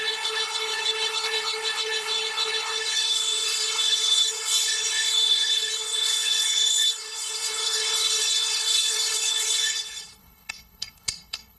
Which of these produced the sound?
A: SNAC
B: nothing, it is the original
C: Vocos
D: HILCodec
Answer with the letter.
D